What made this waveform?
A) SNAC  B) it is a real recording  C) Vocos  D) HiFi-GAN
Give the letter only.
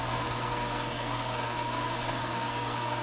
A